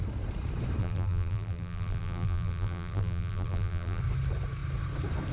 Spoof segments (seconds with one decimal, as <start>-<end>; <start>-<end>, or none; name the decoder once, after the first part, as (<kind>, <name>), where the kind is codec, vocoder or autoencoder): 0.8-4.0 (vocoder, BigVGAN v2)